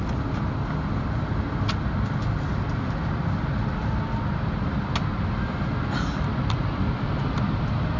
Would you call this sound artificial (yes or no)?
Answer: no